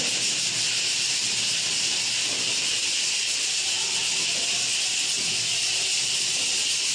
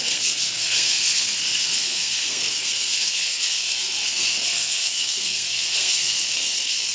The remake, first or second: second